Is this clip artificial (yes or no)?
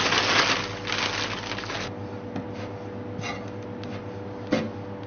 no